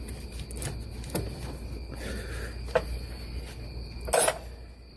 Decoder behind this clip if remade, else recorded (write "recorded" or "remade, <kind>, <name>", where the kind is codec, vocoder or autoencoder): recorded